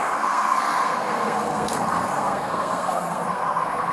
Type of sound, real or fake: fake